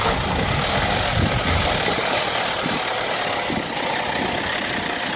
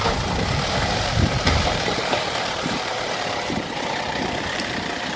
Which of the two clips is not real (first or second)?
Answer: second